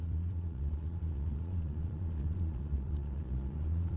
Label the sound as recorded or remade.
remade